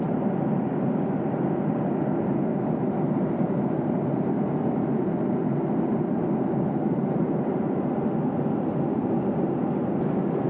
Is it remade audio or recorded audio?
recorded